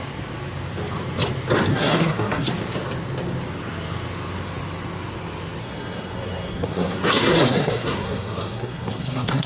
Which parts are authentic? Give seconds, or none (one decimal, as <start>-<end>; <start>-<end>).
0.0-1.7; 2.5-5.6